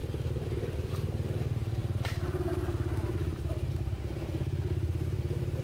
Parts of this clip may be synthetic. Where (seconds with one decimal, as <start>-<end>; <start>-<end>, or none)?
0.0-0.9; 1.8-5.6